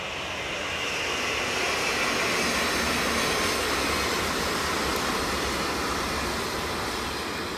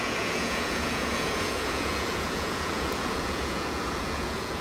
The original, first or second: first